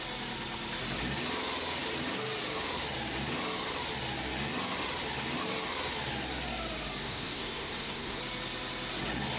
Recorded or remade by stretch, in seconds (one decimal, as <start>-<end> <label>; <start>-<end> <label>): 0.0-7.0 recorded; 7.0-8.2 remade; 8.2-9.4 recorded